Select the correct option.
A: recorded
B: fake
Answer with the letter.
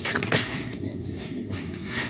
B